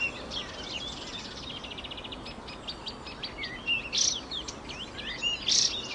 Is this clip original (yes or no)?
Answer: yes